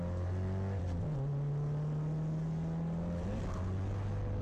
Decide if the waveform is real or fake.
real